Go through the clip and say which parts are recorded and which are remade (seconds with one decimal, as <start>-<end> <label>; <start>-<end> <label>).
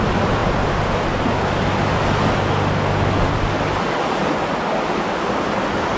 0.0-6.0 recorded